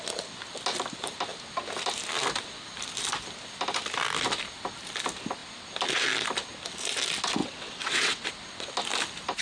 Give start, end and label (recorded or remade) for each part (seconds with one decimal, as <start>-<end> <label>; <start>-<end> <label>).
0.0-7.4 recorded; 7.4-8.3 remade; 8.3-9.4 recorded